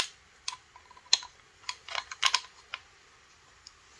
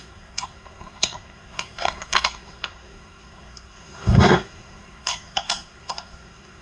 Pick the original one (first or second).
first